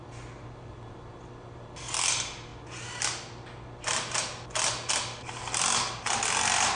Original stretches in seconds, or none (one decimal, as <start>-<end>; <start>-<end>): 0.0-6.8